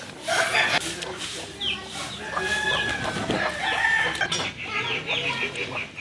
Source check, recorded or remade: recorded